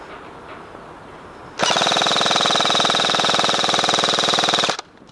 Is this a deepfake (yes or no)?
no